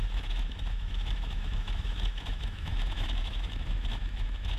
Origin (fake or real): fake